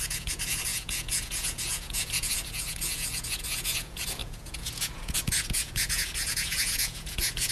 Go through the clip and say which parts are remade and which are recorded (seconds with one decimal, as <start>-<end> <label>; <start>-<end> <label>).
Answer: 0.0-7.5 remade